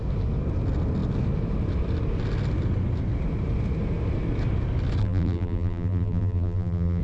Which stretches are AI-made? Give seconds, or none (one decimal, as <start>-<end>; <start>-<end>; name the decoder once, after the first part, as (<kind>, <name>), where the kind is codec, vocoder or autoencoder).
5.0-7.0 (vocoder, BigVGAN v2)